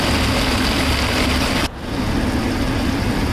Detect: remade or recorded recorded